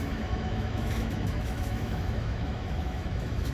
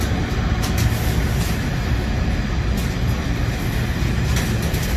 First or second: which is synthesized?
first